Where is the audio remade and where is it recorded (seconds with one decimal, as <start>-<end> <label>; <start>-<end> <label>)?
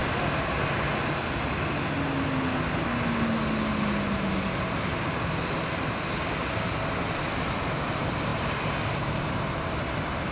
0.0-10.3 recorded